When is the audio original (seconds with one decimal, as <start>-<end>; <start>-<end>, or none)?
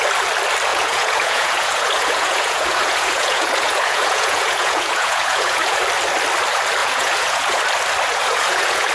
0.0-0.7; 5.8-6.8; 7.6-8.1